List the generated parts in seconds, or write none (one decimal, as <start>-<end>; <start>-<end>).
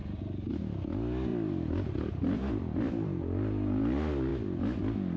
1.3-3.8; 4.3-4.8